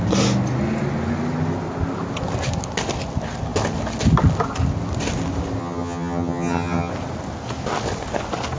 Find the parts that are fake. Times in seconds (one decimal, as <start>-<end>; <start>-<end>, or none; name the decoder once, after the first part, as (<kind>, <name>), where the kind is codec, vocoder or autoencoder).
5.6-6.9 (vocoder, HiFi-GAN)